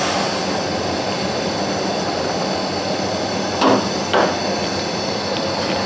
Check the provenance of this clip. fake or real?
real